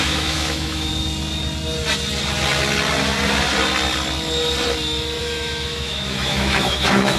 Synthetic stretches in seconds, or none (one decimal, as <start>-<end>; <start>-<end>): 0.0-0.9; 5.2-7.2